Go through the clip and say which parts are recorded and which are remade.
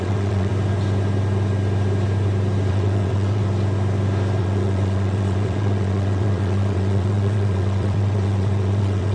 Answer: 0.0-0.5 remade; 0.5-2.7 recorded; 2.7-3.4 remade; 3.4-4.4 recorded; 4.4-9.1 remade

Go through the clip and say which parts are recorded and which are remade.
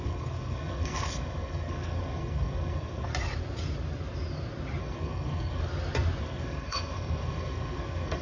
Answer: 0.0-3.1 remade; 3.1-4.8 recorded; 4.8-5.6 remade; 5.6-6.2 recorded; 6.2-8.2 remade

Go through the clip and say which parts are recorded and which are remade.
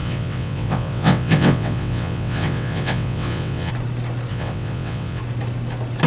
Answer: 0.0-3.7 remade; 3.7-4.3 recorded; 4.3-5.2 remade; 5.2-6.1 recorded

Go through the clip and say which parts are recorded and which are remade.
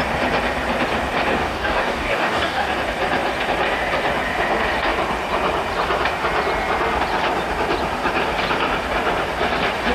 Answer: 0.0-1.3 recorded; 1.3-2.7 remade; 2.7-9.9 recorded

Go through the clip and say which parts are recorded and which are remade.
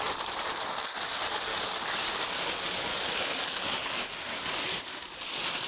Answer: 0.0-5.7 recorded